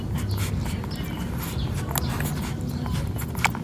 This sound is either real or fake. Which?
real